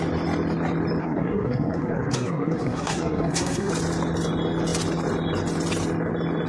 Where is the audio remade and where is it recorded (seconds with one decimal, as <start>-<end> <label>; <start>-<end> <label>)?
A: 0.0-1.0 recorded; 1.0-3.7 remade; 3.7-6.5 recorded